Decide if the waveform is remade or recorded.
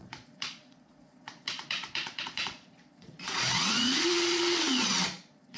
remade